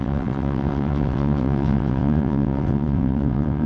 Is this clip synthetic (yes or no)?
yes